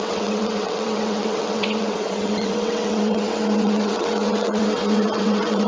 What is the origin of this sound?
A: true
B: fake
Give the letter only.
B